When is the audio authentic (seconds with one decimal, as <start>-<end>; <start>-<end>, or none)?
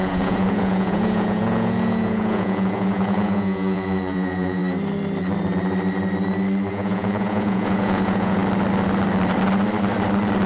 4.6-6.7; 8.4-10.5